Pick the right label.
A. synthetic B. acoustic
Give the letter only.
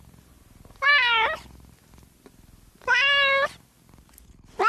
B